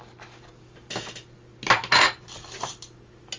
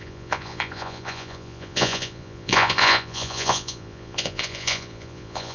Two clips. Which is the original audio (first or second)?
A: first